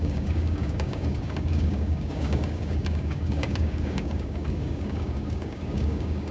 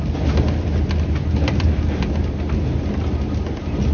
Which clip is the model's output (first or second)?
first